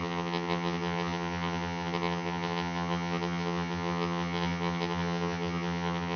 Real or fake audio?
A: fake